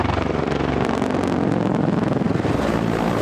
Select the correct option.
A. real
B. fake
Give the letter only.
A